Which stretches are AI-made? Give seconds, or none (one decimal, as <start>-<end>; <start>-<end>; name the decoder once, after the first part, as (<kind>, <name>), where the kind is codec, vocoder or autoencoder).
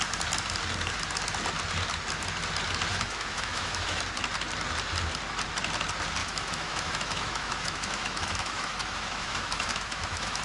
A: 2.9-4.0 (autoencoder, DAC-VAE); 6.2-10.4